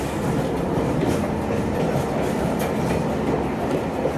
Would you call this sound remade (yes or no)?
no